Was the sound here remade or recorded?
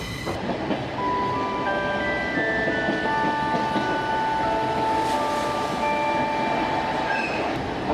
recorded